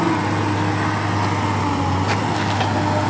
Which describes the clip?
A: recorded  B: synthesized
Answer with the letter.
A